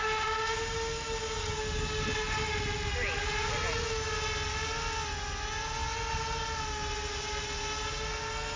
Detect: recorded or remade recorded